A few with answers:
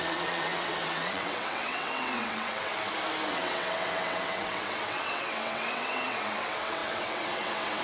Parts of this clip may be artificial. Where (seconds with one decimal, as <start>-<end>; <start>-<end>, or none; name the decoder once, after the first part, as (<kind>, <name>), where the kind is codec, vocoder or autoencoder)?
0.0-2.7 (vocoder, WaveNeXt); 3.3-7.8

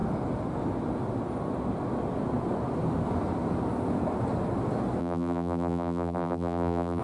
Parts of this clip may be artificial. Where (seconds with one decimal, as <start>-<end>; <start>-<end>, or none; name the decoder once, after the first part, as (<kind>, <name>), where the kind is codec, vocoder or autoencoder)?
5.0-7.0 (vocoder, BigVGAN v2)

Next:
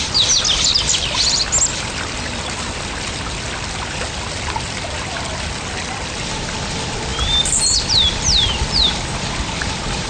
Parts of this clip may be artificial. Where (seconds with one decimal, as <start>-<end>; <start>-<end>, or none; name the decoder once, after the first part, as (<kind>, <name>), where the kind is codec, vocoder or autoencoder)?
none

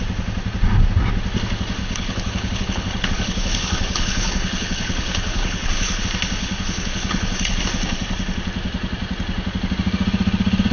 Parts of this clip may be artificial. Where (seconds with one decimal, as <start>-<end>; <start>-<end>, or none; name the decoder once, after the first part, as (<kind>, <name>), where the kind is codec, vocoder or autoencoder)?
1.8-6.0 (codec, HILCodec); 6.4-7.6

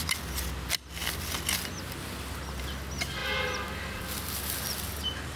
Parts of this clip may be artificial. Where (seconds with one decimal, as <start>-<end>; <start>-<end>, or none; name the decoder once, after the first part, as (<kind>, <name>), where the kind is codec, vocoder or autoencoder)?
none

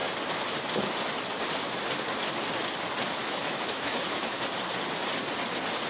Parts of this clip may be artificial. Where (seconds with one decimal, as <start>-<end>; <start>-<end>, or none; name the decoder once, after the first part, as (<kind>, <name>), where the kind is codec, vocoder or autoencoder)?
3.2-4.0 (autoencoder, DAC-VAE)

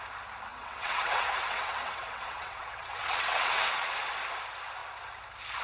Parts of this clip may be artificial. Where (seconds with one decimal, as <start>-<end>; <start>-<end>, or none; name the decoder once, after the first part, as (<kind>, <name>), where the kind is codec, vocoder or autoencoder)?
0.5-3.9 (vocoder, WaveNeXt)